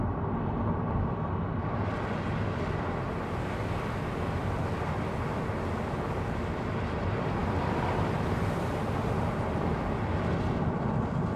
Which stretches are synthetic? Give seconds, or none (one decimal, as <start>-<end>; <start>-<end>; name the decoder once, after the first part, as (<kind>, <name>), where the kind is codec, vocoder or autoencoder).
none